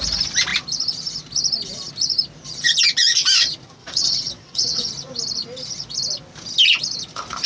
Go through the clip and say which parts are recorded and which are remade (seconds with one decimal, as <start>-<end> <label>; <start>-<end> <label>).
0.0-3.8 recorded; 3.8-4.9 remade; 4.9-7.5 recorded